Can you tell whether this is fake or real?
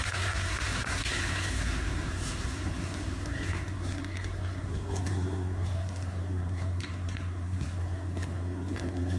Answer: fake